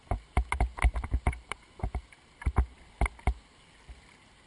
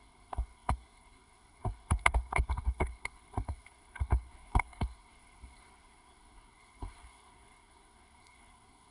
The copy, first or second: second